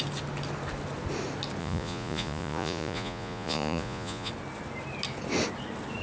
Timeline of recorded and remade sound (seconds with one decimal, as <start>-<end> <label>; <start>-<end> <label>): 0.0-1.6 recorded; 1.6-4.3 remade; 4.3-6.0 recorded